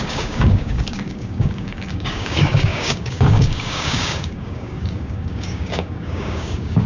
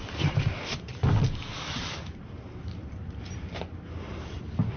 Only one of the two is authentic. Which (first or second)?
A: second